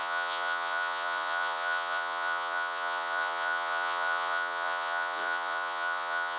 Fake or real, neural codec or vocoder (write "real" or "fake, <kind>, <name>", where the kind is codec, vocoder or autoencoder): fake, vocoder, Vocos